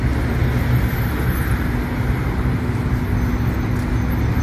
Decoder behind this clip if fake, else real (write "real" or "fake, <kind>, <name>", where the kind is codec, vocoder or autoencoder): real